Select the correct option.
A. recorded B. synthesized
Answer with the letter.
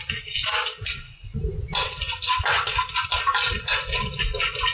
A